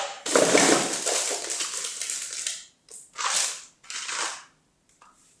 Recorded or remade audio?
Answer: remade